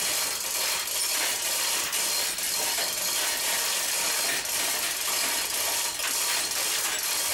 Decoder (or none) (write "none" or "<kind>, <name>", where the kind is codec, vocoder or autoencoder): none